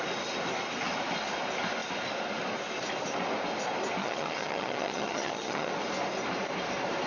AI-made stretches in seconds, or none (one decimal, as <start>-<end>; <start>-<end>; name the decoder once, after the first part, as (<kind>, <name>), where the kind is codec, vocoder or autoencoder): 4.0-5.7 (vocoder, HiFi-GAN)

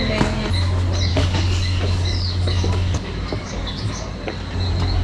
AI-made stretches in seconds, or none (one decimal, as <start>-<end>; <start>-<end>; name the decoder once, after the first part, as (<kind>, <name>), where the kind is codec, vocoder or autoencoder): 1.1-4.1 (codec, DAC)

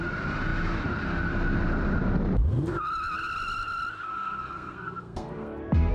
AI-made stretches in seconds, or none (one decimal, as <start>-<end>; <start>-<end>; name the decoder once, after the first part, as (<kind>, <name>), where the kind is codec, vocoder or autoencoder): 4.1-5.9 (codec, SNAC)

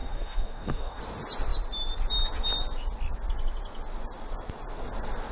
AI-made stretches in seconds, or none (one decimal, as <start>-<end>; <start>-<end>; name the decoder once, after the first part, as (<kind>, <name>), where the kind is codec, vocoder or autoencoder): 0.0-1.0 (codec, DAC)

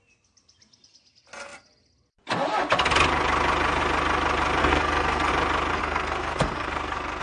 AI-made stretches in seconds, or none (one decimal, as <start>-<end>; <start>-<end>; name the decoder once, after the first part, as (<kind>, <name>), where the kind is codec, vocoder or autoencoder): 4.6-5.3 (codec, SNAC); 5.7-7.2

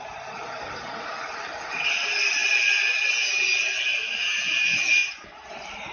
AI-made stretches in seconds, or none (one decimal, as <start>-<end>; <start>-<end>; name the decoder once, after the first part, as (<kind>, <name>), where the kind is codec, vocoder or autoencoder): none